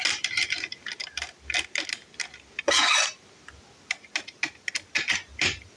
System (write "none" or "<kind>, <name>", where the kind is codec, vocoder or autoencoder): none